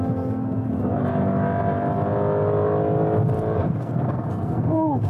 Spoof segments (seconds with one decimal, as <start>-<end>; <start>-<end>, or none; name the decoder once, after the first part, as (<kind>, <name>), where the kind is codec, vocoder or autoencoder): 0.0-0.7 (codec, SNAC); 3.6-5.1